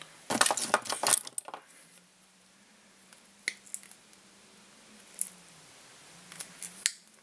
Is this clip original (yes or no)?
yes